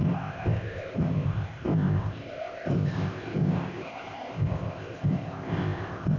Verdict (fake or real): fake